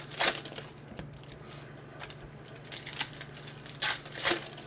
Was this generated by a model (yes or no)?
no